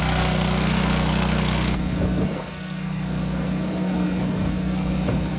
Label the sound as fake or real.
fake